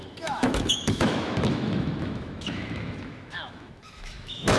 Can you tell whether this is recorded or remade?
remade